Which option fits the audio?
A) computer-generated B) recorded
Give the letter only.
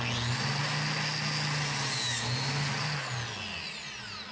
B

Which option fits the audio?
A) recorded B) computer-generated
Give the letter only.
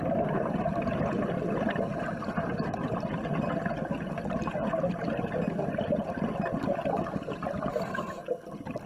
A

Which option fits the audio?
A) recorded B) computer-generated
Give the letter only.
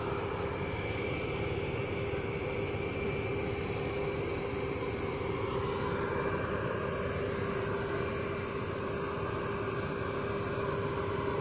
A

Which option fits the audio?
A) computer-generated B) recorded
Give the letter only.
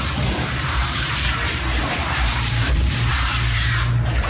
A